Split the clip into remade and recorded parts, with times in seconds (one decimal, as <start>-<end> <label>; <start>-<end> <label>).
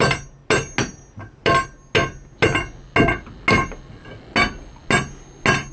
0.0-5.7 recorded